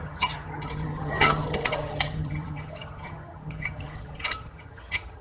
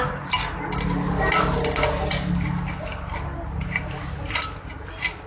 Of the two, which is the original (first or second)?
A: second